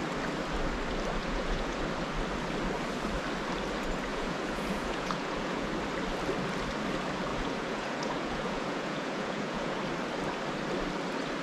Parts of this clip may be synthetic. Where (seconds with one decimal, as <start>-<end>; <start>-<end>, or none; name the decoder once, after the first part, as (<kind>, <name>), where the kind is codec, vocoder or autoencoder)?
1.2-1.8 (vocoder, Vocos); 4.1-5.7; 7.3-9.8